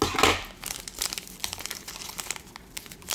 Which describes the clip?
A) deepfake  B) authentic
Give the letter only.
B